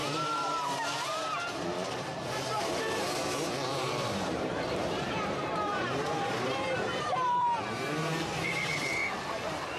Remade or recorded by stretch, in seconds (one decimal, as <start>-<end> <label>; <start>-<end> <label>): 0.0-9.0 remade; 9.0-9.8 recorded